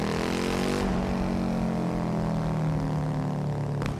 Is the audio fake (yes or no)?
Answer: no